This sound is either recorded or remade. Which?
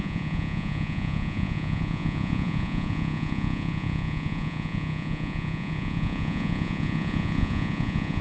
remade